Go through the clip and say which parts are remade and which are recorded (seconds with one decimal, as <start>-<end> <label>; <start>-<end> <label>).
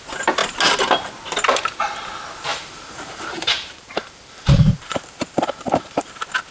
0.0-2.5 recorded; 2.5-6.1 remade; 6.1-6.5 recorded